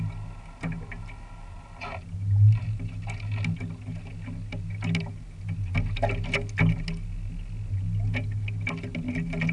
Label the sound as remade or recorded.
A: recorded